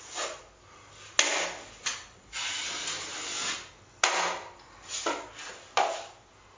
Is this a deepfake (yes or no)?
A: no